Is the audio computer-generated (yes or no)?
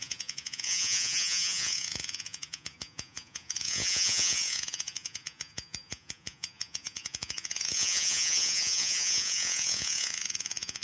yes